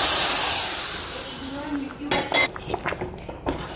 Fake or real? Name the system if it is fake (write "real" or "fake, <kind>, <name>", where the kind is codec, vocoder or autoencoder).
real